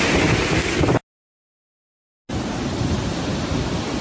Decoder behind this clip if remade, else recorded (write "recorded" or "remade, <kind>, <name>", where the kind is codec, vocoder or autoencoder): recorded